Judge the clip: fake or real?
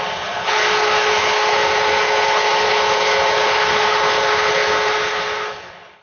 fake